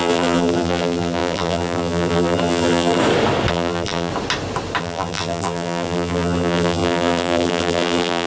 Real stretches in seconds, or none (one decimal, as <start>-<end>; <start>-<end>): 3.0-3.5; 4.1-4.8